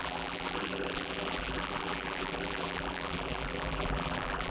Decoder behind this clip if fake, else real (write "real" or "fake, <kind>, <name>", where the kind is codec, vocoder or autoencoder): fake, vocoder, BigVGAN v2